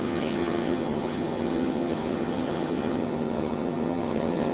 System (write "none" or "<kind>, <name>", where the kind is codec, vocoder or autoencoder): vocoder, HiFi-GAN